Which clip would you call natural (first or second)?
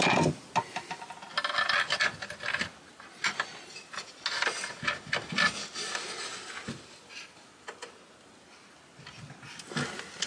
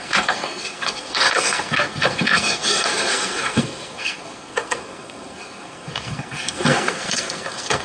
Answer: first